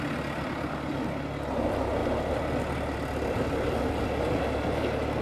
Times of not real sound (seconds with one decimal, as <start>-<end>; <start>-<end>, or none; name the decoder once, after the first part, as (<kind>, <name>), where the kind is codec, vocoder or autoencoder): none